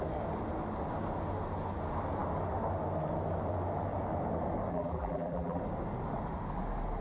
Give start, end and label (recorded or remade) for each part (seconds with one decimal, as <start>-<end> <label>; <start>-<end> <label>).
0.0-4.7 recorded; 4.7-5.6 remade; 5.6-7.0 recorded